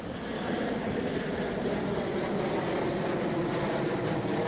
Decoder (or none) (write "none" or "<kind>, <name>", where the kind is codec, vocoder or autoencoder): none